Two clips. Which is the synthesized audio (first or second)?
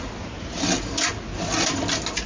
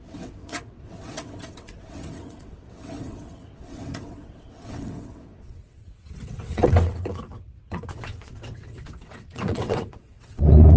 second